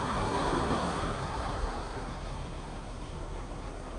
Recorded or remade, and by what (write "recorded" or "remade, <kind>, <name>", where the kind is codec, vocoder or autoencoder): remade, codec, SNAC